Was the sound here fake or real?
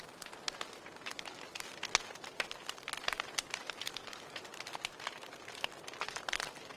real